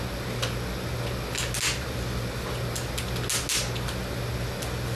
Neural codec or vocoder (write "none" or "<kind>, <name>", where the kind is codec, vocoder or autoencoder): none